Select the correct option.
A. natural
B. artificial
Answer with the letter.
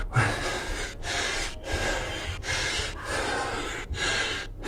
A